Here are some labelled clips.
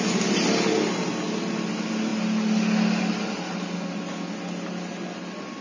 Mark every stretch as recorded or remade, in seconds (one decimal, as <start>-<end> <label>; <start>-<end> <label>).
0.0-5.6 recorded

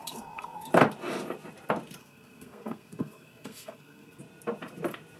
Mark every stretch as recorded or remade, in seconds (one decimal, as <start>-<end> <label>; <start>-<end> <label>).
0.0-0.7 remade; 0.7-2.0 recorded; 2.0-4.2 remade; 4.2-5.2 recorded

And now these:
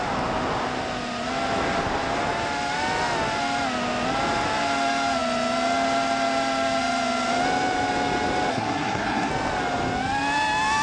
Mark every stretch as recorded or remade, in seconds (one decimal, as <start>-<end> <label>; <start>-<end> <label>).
0.0-8.5 recorded; 8.5-9.3 remade; 9.3-10.8 recorded